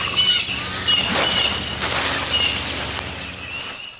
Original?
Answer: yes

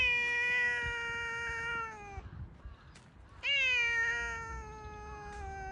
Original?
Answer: yes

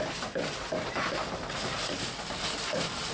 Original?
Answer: yes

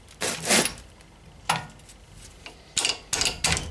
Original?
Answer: yes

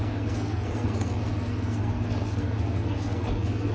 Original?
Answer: no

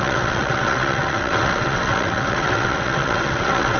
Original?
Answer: no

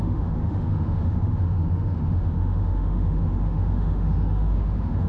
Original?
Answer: no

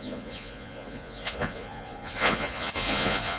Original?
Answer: no